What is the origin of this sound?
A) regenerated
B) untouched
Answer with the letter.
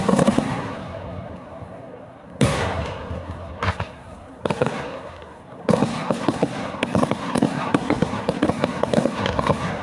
A